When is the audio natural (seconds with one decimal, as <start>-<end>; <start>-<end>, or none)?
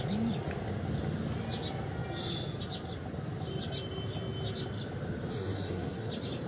0.0-5.3; 6.1-6.5